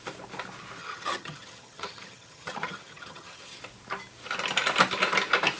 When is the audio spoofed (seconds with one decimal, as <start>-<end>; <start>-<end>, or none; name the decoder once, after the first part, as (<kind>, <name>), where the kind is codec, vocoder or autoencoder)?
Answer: 0.8-3.6 (vocoder, HiFi-GAN)